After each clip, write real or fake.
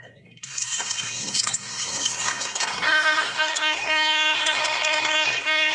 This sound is fake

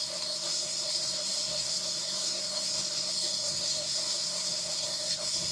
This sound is fake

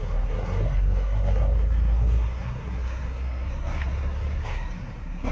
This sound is fake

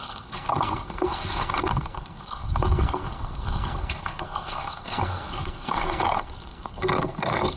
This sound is fake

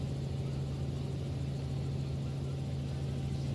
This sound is real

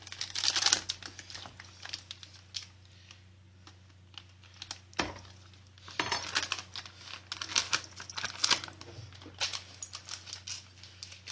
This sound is real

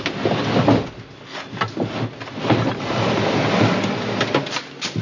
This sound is real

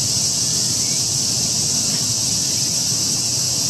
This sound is real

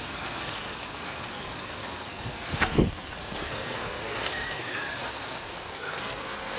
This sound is fake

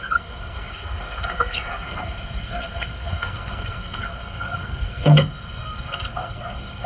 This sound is fake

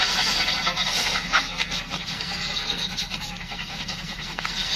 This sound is fake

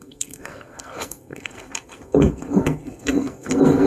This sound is fake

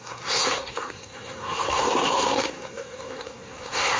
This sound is fake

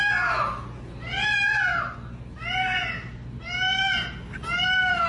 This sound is real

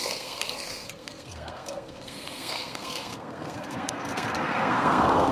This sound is fake